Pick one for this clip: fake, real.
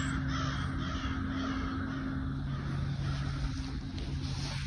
real